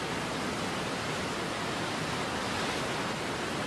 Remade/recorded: recorded